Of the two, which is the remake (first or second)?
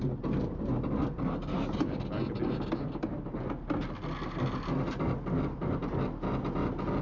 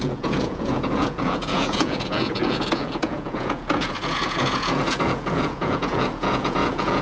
second